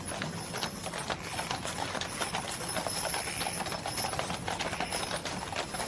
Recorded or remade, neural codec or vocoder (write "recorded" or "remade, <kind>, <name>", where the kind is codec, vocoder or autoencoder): recorded